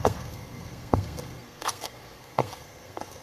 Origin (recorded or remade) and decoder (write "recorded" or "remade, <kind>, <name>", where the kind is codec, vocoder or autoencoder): remade, codec, SNAC